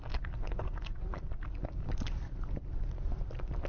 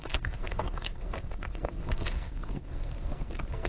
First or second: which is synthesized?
second